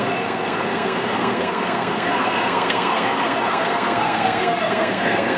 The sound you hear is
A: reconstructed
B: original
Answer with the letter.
A